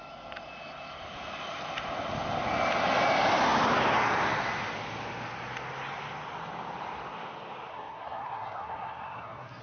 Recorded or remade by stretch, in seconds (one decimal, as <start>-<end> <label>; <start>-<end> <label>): 0.0-7.7 recorded; 7.7-9.6 remade